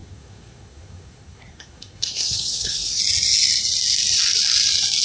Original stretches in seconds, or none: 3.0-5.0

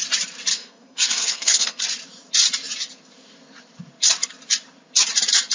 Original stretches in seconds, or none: 0.0-0.5; 1.8-5.5

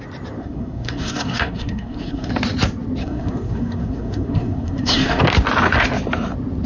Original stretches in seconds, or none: 0.0-0.4; 2.3-3.0; 5.2-6.7

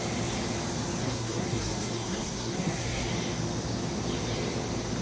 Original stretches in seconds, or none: 0.0-1.0; 3.1-5.0

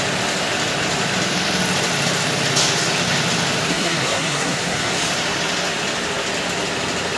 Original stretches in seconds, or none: 0.0-3.7; 4.9-7.2